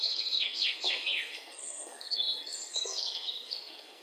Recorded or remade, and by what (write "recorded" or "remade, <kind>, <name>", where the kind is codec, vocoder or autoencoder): remade, codec, SNAC